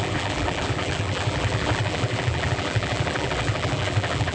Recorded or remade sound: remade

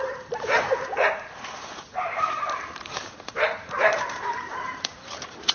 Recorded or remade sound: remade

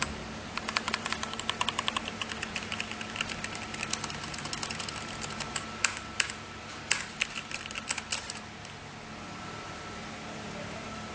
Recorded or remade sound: recorded